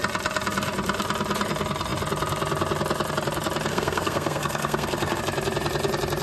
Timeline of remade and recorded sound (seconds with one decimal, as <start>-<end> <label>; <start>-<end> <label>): 0.0-3.7 recorded; 3.7-5.2 remade; 5.2-6.2 recorded